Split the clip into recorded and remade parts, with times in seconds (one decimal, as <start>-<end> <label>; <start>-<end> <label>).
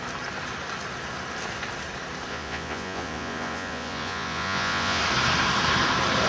0.0-2.3 recorded; 2.3-5.0 remade; 5.0-6.3 recorded